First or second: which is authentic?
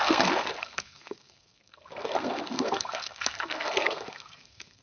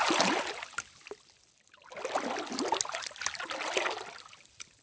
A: second